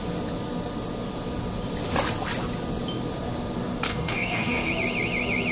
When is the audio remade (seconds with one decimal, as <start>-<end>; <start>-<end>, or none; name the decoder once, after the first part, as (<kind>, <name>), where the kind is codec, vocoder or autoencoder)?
3.9-4.7 (codec, DAC)